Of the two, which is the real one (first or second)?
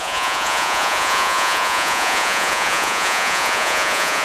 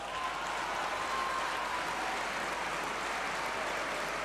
second